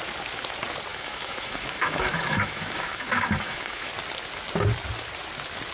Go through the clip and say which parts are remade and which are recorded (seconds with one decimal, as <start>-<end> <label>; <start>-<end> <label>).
0.0-0.9 recorded; 0.9-3.9 remade; 3.9-5.7 recorded